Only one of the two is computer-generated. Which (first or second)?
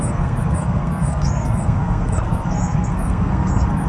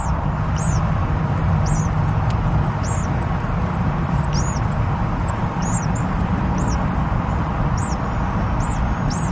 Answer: first